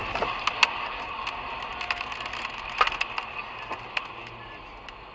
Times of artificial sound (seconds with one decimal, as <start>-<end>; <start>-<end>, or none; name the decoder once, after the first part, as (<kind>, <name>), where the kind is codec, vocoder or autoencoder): none